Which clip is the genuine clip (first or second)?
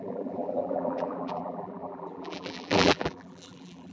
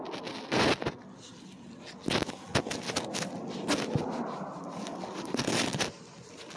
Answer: second